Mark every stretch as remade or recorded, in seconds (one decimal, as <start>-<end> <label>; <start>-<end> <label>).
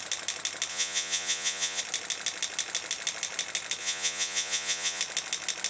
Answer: 0.0-0.7 recorded; 0.7-1.8 remade; 1.8-3.8 recorded; 3.8-5.0 remade; 5.0-5.7 recorded